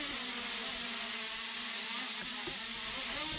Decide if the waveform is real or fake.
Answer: real